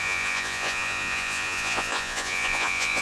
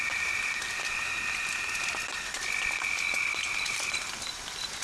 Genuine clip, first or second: second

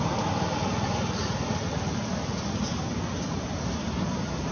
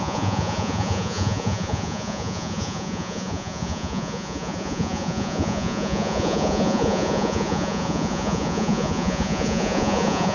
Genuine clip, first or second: first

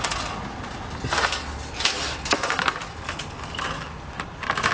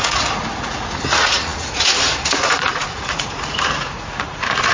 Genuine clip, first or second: first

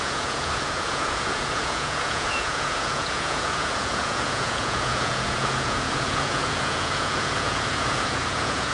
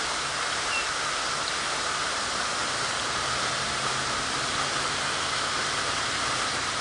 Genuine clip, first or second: second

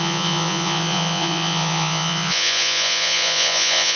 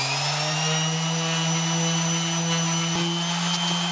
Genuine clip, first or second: second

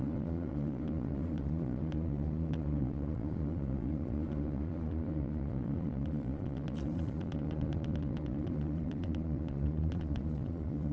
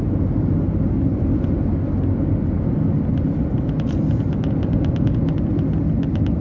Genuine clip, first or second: second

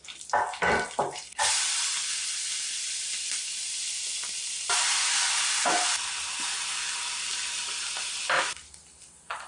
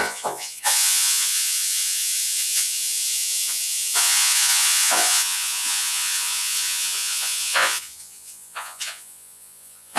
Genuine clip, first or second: first